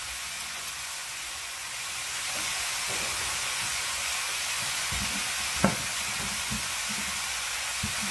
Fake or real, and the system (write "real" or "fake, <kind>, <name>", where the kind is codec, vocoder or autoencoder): fake, vocoder, Vocos